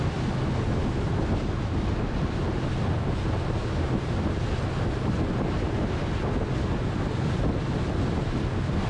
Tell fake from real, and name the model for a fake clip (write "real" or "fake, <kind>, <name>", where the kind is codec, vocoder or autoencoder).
real